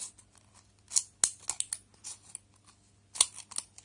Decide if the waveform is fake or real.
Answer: real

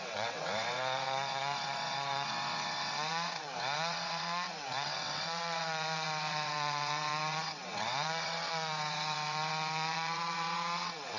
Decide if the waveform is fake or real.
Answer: fake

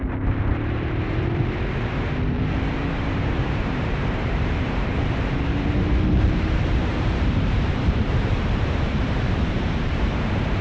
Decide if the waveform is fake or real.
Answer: fake